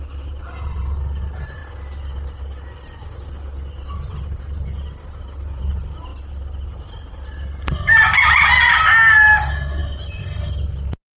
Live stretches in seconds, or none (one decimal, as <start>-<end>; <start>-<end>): 0.0-11.2